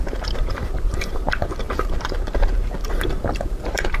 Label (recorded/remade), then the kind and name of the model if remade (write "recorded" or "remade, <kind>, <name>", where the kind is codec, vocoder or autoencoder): remade, vocoder, BigVGAN v2